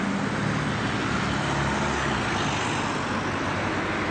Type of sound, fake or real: real